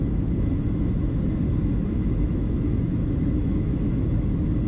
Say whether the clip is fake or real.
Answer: fake